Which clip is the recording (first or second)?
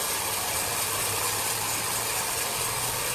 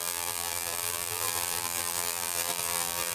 first